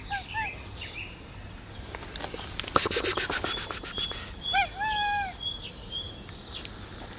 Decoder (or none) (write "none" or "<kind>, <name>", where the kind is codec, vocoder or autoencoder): none